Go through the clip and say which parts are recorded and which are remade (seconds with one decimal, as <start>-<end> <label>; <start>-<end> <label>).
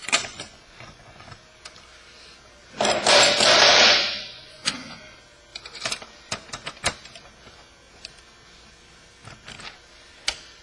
0.0-1.3 remade; 1.3-3.7 recorded; 3.7-5.0 remade; 5.0-10.6 recorded